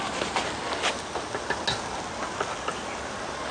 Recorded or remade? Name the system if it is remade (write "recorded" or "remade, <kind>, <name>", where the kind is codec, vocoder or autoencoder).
recorded